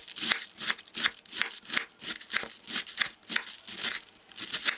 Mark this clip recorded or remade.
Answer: recorded